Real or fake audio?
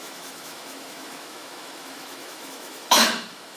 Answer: fake